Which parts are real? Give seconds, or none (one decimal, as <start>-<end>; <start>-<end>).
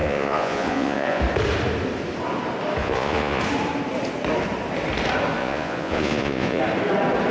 1.2-2.8; 3.4-5.4; 6.6-7.3